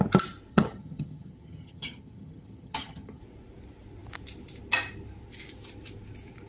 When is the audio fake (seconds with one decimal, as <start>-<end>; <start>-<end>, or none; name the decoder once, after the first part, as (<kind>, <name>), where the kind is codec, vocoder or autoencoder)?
0.5-3.2 (vocoder, HiFi-GAN)